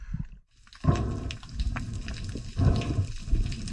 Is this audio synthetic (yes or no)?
no